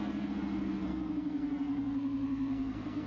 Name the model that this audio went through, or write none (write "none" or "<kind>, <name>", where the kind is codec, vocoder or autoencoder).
codec, SNAC